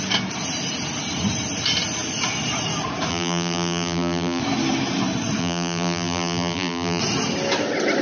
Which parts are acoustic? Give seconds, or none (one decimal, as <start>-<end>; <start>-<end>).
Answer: 0.0-3.1; 4.4-5.4; 7.0-8.0

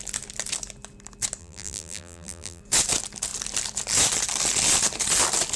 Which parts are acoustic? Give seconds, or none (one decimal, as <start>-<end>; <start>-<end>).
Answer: 0.0-1.4; 2.6-5.6

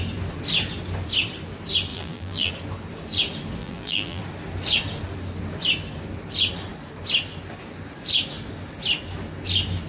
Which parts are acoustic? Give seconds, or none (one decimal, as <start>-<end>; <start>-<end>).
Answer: 0.0-1.9; 2.5-3.6; 4.2-9.9

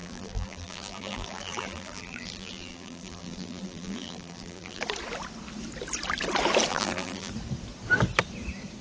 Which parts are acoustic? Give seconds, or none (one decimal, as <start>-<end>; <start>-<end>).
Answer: 4.8-6.7; 7.3-8.8

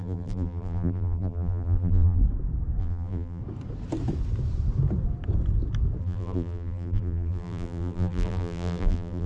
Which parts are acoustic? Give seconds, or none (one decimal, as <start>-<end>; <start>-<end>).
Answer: 2.2-2.8; 3.4-6.0

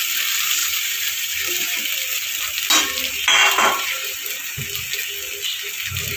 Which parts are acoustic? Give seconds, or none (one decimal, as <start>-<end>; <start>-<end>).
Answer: 0.0-0.6; 1.8-3.4; 4.6-6.2

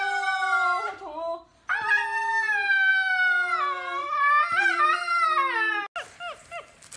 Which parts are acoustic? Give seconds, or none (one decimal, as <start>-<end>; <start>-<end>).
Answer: 0.0-4.0; 4.8-7.0